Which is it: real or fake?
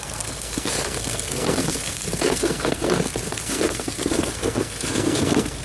fake